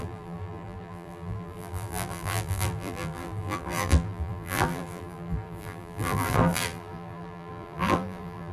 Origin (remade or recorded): remade